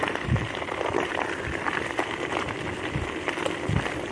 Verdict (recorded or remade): recorded